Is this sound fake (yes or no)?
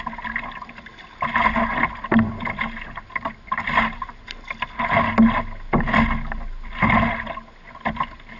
no